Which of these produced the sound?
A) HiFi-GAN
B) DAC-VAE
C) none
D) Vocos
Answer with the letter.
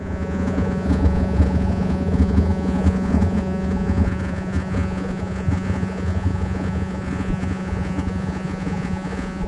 D